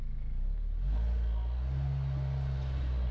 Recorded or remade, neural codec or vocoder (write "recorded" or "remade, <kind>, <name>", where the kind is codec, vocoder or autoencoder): recorded